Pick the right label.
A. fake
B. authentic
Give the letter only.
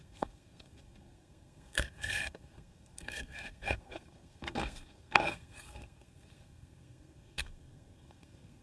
A